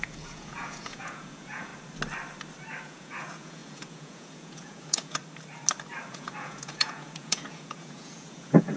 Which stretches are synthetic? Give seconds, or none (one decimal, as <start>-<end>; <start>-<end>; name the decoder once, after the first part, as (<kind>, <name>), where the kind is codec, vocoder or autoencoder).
0.0-1.7 (vocoder, Vocos); 2.8-5.2; 6.1-8.8

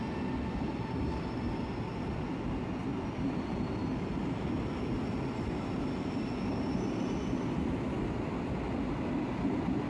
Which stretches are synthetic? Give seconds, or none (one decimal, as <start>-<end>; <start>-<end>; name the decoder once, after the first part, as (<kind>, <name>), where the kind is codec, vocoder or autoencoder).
none

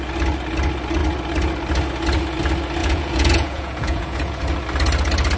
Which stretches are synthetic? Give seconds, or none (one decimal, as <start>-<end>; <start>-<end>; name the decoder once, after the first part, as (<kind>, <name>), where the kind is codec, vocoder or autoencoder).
2.8-4.4 (vocoder, Vocos)

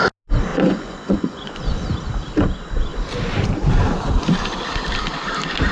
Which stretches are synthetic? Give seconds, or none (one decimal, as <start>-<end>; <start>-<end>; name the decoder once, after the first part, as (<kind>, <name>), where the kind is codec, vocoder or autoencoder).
0.5-1.6 (vocoder, Vocos)

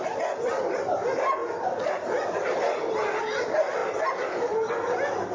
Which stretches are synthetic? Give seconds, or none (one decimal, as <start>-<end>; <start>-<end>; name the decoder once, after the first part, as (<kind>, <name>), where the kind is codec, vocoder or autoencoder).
none

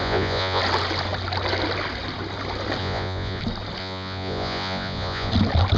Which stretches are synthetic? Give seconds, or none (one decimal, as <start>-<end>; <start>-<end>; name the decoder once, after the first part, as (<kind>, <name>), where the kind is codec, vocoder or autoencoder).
0.0-0.6 (vocoder, Vocos); 2.8-3.4; 3.8-5.3